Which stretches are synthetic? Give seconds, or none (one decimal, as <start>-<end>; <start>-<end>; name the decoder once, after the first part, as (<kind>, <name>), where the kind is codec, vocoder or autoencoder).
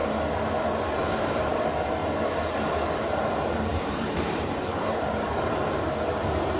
1.3-2.0 (vocoder, BigVGAN v2); 3.0-6.6